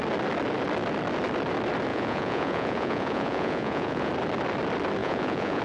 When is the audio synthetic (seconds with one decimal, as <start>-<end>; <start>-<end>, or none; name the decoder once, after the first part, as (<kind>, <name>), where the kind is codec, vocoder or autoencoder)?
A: 1.9-4.1 (vocoder, Vocos); 5.0-5.6

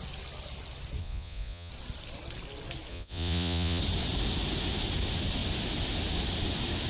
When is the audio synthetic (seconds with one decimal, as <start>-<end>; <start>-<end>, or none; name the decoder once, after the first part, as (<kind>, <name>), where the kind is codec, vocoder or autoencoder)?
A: 1.0-1.7 (vocoder, Vocos); 2.9-3.8

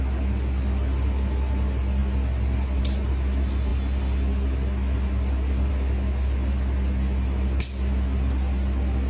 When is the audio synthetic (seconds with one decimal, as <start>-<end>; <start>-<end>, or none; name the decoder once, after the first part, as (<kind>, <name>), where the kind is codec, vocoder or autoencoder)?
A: none

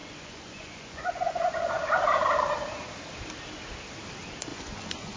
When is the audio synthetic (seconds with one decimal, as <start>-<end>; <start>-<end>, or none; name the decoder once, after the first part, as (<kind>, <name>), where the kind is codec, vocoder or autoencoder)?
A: 0.0-1.7 (vocoder, Vocos); 4.5-5.2